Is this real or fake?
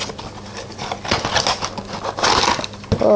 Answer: real